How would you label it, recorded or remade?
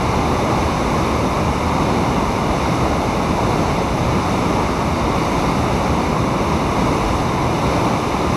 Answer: recorded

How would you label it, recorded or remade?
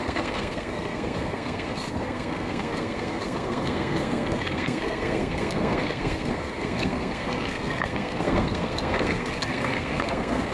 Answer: remade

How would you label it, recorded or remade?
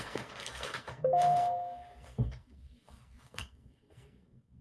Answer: remade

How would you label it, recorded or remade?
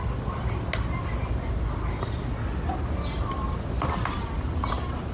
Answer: recorded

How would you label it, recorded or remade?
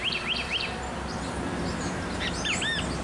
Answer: recorded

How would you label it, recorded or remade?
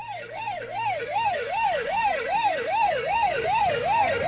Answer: remade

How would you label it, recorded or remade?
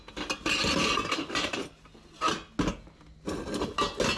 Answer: recorded